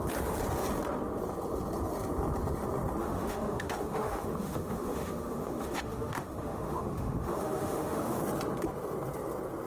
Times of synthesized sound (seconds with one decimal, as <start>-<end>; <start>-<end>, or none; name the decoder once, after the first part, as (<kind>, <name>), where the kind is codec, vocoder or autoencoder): 3.0-8.2 (autoencoder, DAC-VAE)